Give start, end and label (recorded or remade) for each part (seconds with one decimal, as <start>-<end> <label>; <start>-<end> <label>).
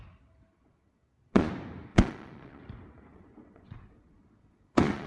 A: 0.0-0.5 recorded; 0.5-1.5 remade; 1.5-1.9 recorded; 1.9-2.6 remade; 2.6-3.1 recorded; 3.1-5.1 remade